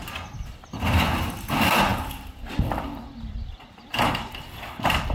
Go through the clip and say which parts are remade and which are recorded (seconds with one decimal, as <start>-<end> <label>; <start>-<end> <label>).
0.0-5.1 recorded